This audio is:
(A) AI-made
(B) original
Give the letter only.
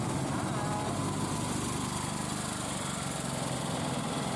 B